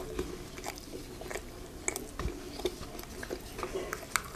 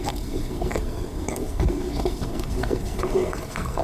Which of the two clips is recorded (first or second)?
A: first